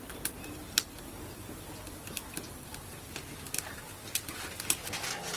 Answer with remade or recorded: remade